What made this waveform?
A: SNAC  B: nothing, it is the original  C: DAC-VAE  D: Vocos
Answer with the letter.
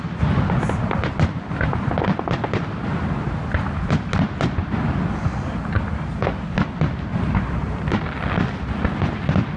B